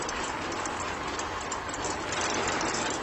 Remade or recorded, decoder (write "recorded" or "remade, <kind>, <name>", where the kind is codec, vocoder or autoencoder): recorded